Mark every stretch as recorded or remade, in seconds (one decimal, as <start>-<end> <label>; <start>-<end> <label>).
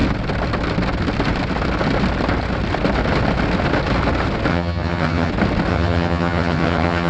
0.0-4.5 recorded; 4.5-5.3 remade; 5.3-5.7 recorded; 5.7-7.1 remade